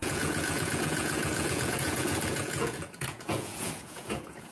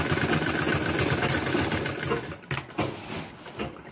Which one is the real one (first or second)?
second